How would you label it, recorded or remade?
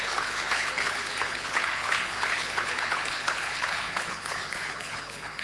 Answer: remade